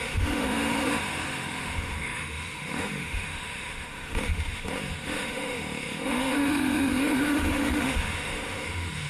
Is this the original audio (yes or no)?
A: no